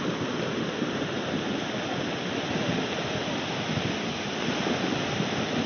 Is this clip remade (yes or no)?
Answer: no